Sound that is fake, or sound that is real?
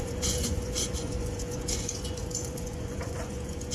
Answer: fake